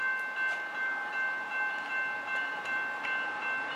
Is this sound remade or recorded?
recorded